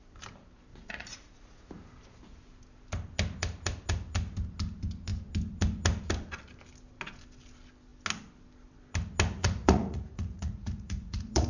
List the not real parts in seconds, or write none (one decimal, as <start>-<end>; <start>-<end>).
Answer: 0.7-1.7; 9.4-11.5